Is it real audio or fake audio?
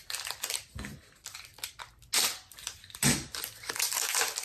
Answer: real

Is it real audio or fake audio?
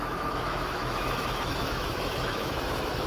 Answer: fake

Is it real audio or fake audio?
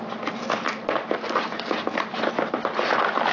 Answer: real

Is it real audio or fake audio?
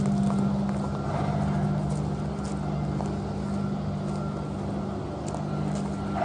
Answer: real